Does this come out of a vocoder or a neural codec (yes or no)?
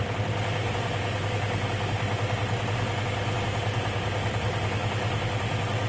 no